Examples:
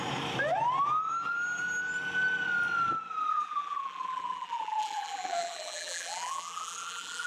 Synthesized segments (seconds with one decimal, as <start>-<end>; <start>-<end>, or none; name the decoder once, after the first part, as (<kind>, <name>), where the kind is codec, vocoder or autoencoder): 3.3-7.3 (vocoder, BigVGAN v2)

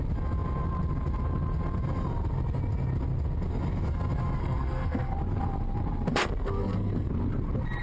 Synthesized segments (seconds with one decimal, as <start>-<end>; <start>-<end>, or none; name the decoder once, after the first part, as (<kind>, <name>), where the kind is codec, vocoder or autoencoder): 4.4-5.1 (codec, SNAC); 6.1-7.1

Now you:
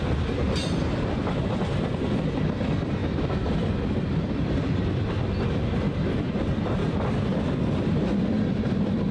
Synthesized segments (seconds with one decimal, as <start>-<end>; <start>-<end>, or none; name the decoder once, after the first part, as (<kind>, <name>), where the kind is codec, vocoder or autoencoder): none

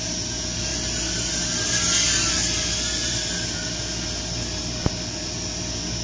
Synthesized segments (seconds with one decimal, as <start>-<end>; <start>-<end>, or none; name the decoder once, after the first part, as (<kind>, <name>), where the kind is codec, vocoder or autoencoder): none

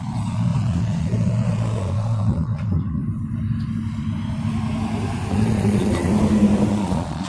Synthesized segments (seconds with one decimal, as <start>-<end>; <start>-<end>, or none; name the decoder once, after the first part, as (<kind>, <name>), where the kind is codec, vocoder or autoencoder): 0.0-3.0 (vocoder, Vocos); 5.3-6.1; 6.7-7.3

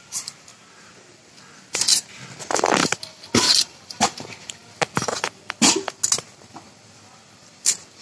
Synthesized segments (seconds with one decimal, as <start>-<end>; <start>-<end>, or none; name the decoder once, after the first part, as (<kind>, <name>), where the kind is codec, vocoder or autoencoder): 0.0-0.5 (vocoder, BigVGAN v2); 2.4-2.8; 3.5-4.6; 7.4-8.0